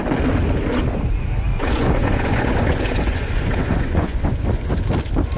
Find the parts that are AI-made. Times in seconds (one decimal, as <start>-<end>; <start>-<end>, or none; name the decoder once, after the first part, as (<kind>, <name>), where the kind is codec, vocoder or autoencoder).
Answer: 1.5-4.7 (vocoder, Vocos)